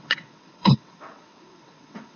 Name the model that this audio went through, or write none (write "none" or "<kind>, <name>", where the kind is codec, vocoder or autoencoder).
vocoder, WaveNeXt